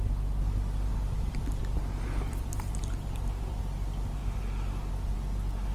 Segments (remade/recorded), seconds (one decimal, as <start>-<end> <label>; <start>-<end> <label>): 0.0-0.9 recorded; 0.9-3.6 remade; 3.6-5.7 recorded